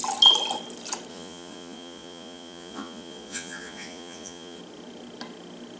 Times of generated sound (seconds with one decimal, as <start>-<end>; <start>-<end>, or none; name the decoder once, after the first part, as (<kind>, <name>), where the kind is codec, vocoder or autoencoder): 1.1-4.6 (vocoder, Vocos)